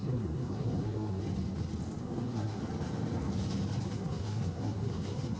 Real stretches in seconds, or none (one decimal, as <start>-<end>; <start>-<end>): 1.2-2.0; 2.6-3.8